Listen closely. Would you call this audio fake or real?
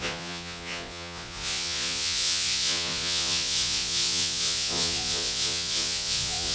fake